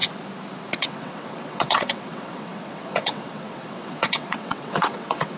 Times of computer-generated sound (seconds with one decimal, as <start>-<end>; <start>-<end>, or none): 0.8-5.4